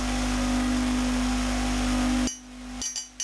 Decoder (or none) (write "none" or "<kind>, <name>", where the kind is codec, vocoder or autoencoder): none